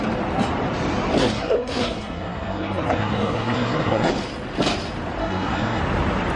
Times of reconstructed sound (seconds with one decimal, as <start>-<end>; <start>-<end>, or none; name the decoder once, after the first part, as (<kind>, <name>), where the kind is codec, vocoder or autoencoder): 1.2-4.1 (codec, SNAC); 5.2-5.8